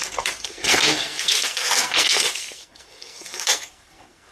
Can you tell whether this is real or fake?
fake